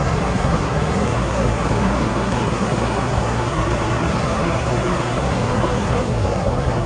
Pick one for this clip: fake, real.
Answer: fake